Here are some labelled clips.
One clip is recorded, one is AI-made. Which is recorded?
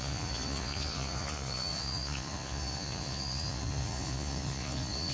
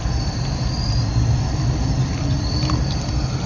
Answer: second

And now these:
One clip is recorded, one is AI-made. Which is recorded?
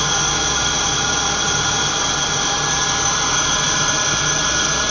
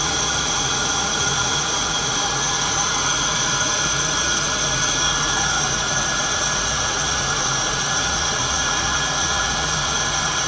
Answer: first